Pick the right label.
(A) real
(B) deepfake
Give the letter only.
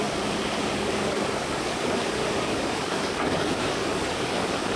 B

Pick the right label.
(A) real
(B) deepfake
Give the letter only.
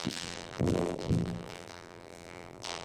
B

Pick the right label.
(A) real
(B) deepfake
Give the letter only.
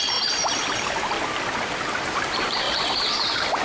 B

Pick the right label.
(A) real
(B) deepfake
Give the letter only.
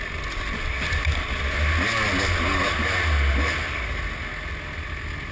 A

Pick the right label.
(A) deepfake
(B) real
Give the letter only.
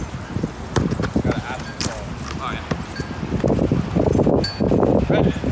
B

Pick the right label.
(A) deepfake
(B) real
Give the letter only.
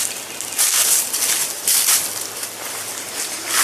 B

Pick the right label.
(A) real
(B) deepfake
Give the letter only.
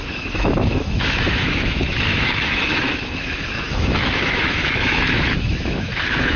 B